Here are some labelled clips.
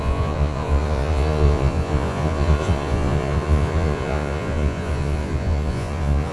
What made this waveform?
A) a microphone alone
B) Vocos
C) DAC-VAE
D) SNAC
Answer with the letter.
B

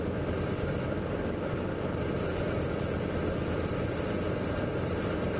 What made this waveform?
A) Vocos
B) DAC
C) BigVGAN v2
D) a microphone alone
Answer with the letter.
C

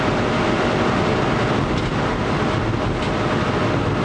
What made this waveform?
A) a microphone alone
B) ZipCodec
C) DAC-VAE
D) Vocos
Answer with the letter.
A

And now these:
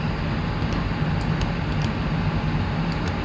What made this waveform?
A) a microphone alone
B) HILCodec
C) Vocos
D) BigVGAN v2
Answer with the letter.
A